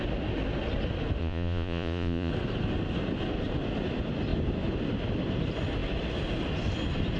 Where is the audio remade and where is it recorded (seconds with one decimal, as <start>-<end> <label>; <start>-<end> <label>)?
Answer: 0.0-1.2 recorded; 1.2-2.3 remade; 2.3-7.2 recorded

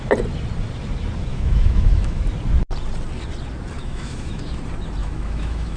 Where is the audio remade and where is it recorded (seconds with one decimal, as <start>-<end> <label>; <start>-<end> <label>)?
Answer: 0.0-1.3 recorded; 1.3-2.2 remade; 2.2-3.8 recorded; 3.8-4.4 remade; 4.4-5.0 recorded; 5.0-5.8 remade